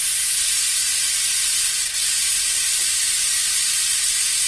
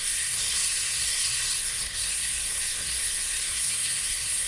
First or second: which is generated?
second